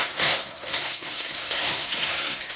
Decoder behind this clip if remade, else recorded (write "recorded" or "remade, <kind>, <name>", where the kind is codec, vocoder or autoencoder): remade, codec, SNAC